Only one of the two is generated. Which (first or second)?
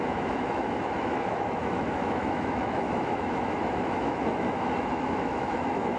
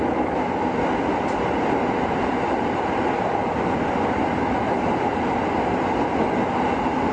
first